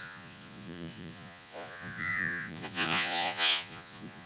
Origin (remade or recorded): remade